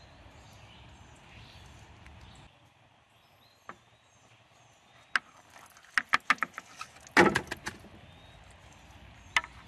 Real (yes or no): yes